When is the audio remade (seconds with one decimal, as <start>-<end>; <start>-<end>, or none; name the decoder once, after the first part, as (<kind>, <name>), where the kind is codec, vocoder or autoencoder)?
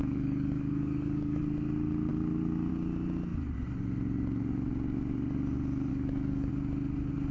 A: 0.0-1.4 (codec, DAC); 5.9-6.5